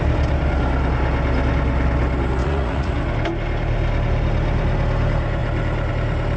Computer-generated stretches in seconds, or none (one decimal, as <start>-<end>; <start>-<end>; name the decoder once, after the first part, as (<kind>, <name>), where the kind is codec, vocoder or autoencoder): 2.4-2.9 (vocoder, Vocos)